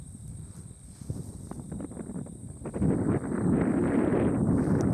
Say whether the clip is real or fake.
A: real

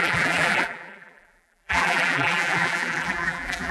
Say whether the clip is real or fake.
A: fake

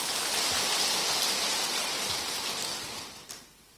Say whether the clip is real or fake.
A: real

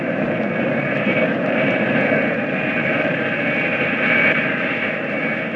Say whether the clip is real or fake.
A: fake